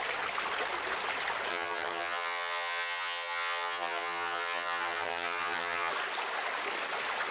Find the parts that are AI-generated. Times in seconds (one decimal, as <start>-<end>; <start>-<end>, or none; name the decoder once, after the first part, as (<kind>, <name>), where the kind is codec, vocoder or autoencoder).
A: 1.5-5.9 (vocoder, HiFi-GAN)